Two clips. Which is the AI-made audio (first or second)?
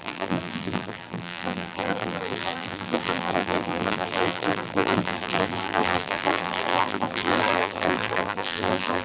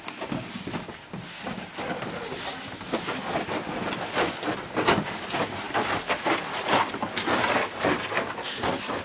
first